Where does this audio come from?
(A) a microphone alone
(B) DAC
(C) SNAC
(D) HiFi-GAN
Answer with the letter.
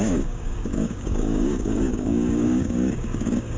B